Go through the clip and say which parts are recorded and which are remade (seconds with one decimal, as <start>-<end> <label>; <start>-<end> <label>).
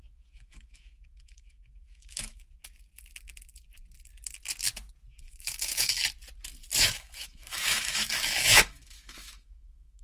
0.0-2.6 remade; 2.6-5.2 recorded; 5.2-6.0 remade; 6.0-6.8 recorded; 6.8-10.0 remade